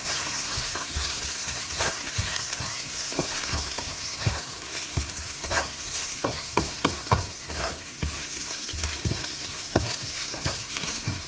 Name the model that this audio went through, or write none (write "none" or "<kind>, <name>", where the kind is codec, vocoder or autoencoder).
codec, SNAC